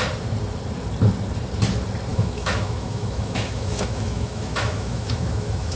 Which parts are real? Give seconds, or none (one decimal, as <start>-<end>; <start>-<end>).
0.0-2.1